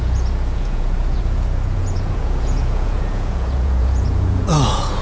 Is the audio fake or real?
fake